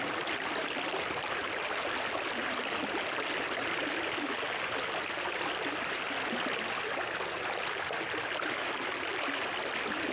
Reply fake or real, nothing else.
real